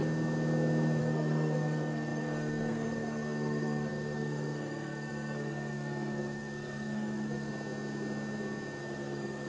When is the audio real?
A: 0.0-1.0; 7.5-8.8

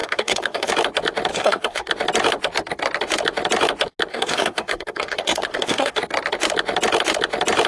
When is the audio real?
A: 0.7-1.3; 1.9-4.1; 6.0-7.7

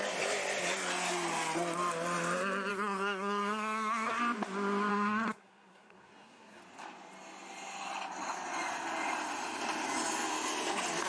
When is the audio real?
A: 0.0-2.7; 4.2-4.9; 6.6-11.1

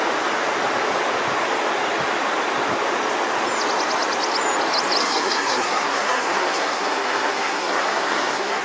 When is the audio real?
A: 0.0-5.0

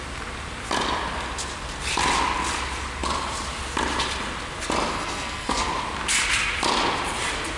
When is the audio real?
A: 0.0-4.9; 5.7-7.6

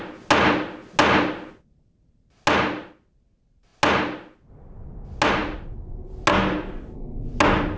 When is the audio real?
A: 0.0-7.8